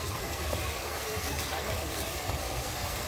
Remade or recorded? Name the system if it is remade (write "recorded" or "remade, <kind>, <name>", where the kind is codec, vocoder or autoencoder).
remade, codec, SNAC